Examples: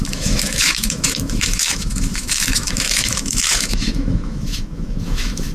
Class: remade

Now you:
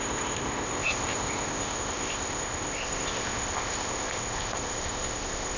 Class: remade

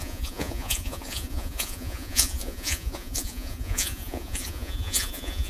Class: remade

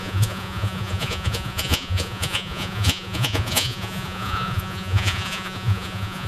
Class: remade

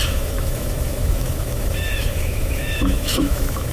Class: remade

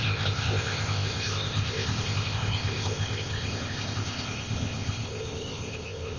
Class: remade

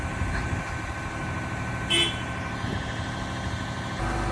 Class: remade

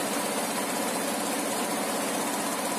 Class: recorded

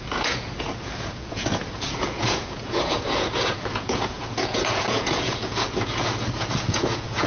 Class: remade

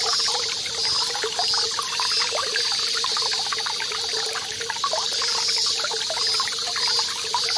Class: recorded